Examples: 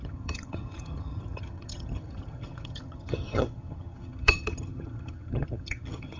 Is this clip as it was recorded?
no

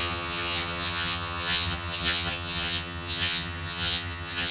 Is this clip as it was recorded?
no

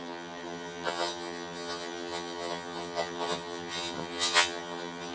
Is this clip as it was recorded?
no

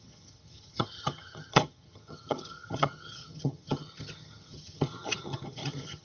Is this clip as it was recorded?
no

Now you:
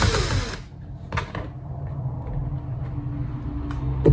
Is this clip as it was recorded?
yes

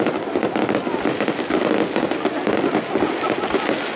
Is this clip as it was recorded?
yes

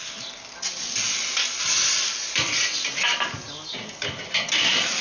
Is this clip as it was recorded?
yes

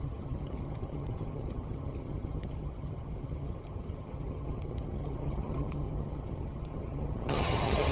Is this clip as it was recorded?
no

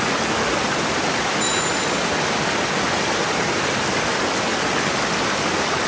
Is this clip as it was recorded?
yes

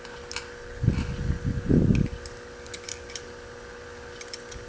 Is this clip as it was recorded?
yes